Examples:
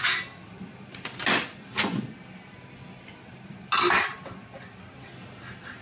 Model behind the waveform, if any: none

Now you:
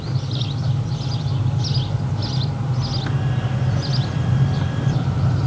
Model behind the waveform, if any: none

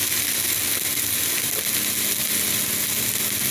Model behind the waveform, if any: none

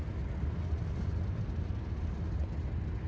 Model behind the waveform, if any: none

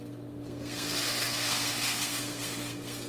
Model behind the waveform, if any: codec, SNAC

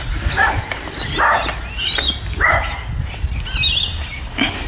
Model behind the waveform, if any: none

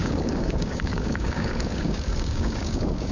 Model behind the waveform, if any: codec, DAC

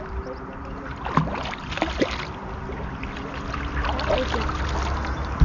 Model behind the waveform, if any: none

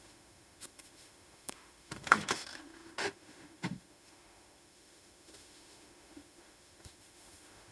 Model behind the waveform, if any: autoencoder, DAC-VAE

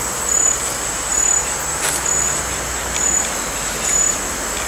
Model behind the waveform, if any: none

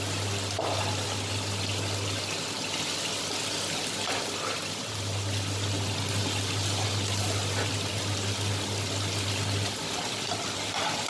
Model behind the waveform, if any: none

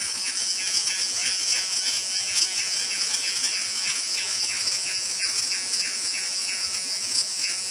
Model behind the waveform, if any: vocoder, Vocos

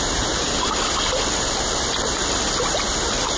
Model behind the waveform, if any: none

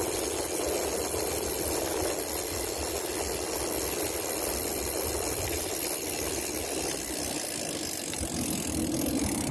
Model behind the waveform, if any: none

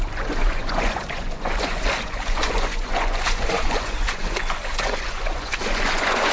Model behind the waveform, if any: vocoder, Vocos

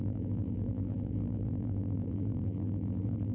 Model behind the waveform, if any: vocoder, BigVGAN v2